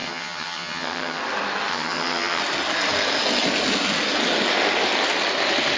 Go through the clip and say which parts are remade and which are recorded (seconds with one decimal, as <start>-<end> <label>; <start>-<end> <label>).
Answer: 0.0-1.2 remade; 1.2-1.7 recorded; 1.7-2.4 remade; 2.4-5.8 recorded